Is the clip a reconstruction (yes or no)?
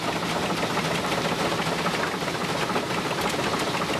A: no